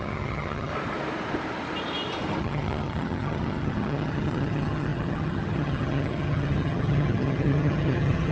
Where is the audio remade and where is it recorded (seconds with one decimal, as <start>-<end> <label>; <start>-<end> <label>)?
0.0-0.7 remade; 0.7-2.4 recorded; 2.4-8.3 remade